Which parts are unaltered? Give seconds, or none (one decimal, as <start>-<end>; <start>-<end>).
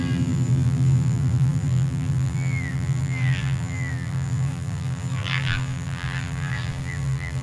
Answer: none